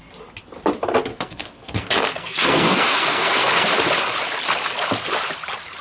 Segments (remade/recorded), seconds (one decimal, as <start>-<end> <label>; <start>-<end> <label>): 0.0-1.1 recorded; 1.1-3.7 remade; 3.7-5.8 recorded